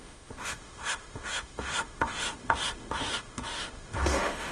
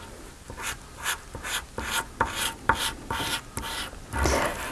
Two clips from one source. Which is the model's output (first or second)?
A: first